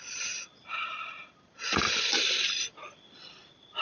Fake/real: real